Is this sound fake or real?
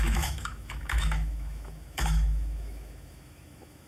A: fake